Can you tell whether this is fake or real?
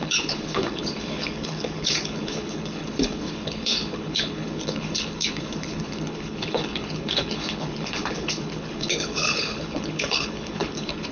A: fake